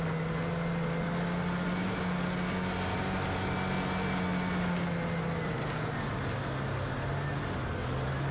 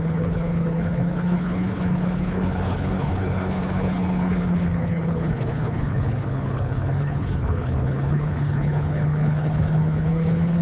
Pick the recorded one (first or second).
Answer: first